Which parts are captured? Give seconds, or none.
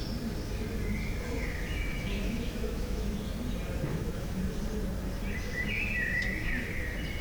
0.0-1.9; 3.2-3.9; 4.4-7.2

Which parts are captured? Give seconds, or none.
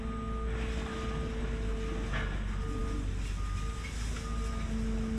0.0-5.2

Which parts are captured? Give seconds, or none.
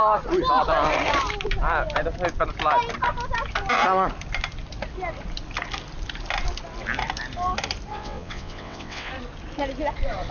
0.0-7.9; 9.1-10.3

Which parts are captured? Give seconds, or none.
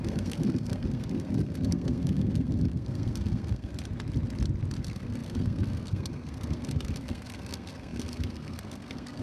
3.7-4.8